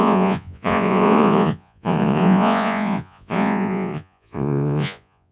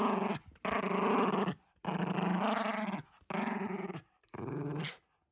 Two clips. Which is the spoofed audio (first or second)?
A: first